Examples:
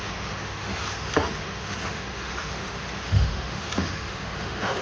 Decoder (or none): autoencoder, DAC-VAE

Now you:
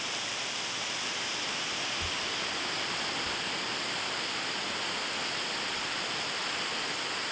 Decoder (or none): none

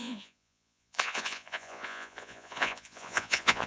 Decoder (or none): vocoder, Vocos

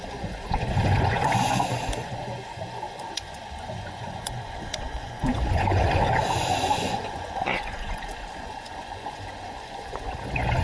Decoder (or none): vocoder, Vocos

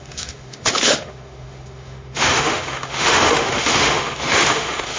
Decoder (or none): autoencoder, DAC-VAE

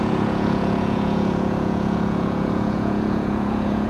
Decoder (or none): vocoder, Vocos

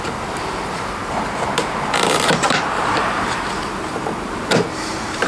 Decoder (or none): vocoder, BigVGAN v2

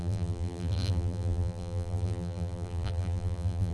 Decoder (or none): vocoder, BigVGAN v2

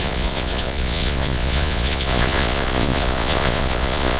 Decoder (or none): vocoder, Vocos